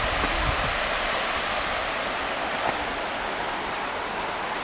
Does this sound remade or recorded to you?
recorded